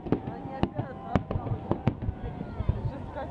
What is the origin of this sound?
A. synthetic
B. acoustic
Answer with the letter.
B